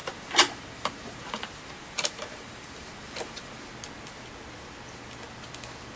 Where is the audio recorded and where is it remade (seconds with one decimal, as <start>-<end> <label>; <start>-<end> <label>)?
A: 0.0-3.6 remade; 3.6-6.0 recorded